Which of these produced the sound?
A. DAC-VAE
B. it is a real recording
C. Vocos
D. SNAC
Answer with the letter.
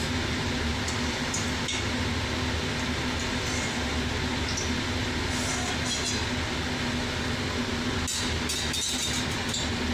B